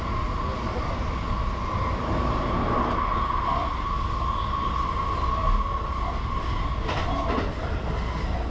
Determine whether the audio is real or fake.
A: real